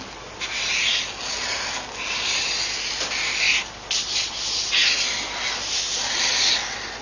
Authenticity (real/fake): real